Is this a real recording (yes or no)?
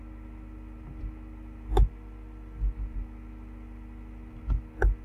yes